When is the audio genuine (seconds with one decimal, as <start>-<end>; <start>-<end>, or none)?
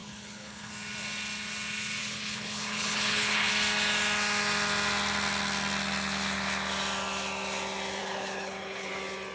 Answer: 0.7-2.0; 3.5-8.0; 8.9-9.3